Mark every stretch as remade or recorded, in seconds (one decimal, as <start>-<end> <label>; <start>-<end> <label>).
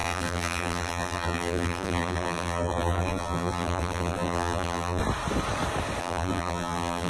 0.0-5.0 remade; 5.0-6.0 recorded; 6.0-7.1 remade